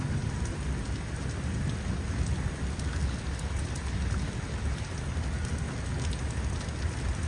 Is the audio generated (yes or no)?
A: no